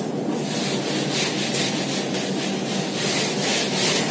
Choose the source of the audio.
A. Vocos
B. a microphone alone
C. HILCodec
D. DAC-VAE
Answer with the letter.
B